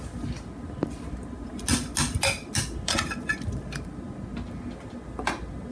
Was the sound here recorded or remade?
recorded